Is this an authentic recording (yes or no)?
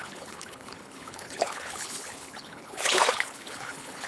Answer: no